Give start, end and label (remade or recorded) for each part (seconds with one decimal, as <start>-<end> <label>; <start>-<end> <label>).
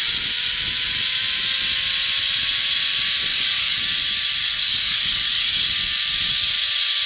0.0-3.3 recorded; 3.3-3.8 remade; 3.8-4.4 recorded; 4.4-5.8 remade; 5.8-7.1 recorded